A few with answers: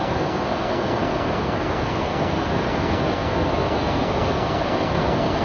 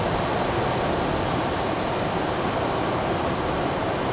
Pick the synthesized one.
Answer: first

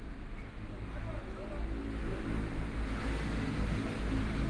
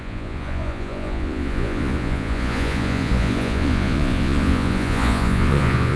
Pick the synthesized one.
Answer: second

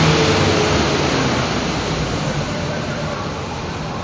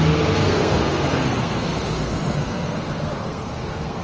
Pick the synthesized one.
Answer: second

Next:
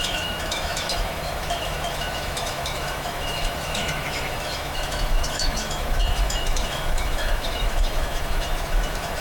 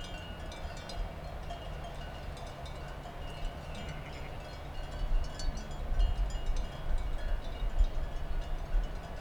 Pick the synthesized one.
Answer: first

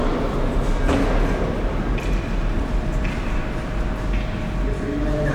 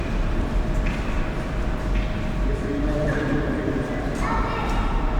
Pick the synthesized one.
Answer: second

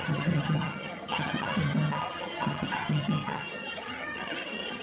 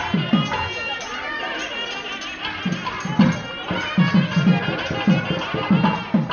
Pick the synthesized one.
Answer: first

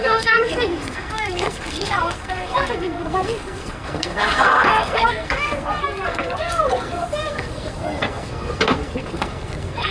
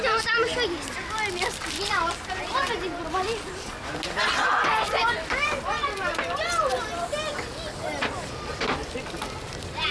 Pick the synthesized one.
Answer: first